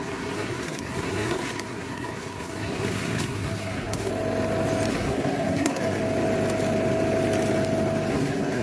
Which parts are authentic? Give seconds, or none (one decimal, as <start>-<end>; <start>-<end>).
4.1-4.9; 6.0-8.1

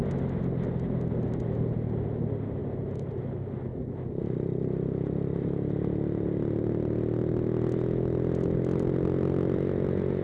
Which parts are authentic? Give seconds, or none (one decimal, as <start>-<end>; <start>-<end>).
0.0-10.2

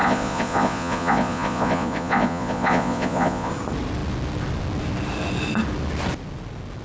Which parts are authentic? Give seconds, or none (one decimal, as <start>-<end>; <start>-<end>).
3.5-6.8

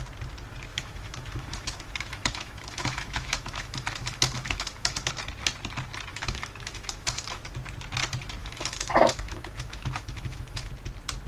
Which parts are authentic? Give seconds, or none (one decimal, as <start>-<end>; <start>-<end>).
0.0-0.7; 5.1-6.1; 7.4-8.4; 10.7-11.3

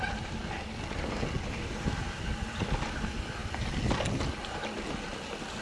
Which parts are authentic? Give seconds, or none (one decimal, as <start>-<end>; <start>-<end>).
0.0-5.6